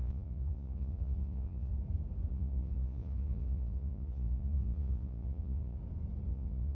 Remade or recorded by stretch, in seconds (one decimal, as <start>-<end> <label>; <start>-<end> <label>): 0.0-1.7 remade; 1.7-2.3 recorded; 2.3-5.8 remade; 5.8-6.3 recorded; 6.3-6.7 remade